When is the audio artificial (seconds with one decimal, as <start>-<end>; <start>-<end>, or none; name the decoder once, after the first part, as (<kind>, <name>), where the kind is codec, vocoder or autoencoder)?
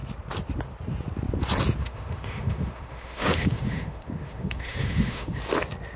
1.8-5.4 (autoencoder, DAC-VAE)